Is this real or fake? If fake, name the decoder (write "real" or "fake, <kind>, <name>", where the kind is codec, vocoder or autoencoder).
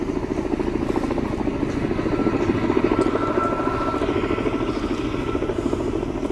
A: real